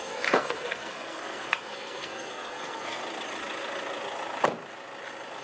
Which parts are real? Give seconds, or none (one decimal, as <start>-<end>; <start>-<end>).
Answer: 3.0-5.4